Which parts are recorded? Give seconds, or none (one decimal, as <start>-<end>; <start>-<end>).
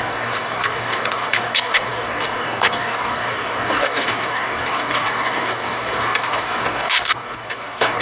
none